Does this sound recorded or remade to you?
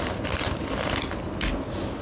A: recorded